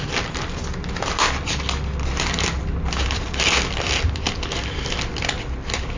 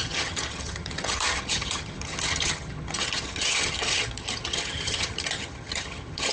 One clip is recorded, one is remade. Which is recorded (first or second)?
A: first